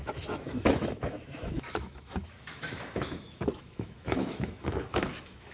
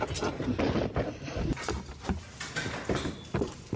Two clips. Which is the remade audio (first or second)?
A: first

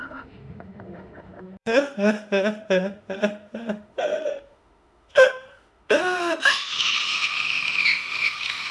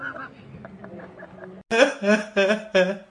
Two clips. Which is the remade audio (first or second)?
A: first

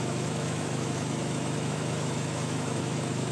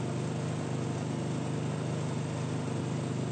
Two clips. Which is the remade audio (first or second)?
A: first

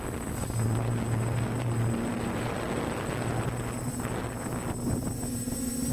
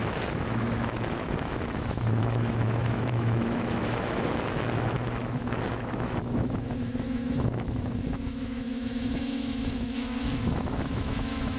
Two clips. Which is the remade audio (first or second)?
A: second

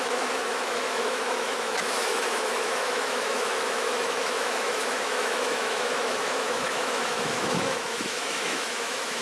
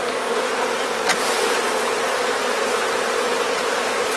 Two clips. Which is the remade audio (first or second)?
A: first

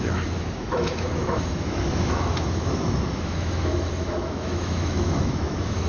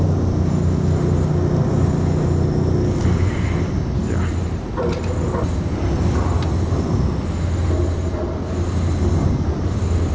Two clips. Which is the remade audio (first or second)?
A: first